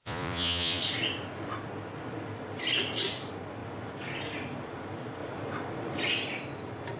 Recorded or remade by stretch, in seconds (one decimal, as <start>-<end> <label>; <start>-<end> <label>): 0.0-0.8 remade; 0.8-7.0 recorded